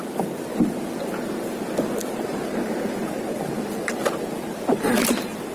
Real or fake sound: real